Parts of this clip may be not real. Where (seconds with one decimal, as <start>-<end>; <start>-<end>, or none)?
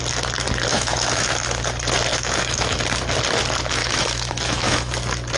0.7-1.6; 2.1-2.8; 3.8-4.9